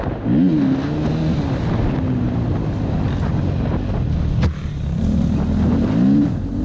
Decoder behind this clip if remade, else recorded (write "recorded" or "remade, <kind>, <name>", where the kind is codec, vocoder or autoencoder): recorded